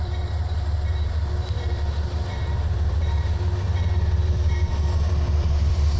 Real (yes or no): no